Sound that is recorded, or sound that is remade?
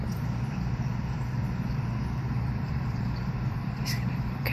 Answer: remade